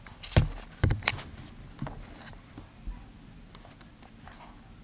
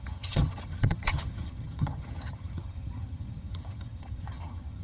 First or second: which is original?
first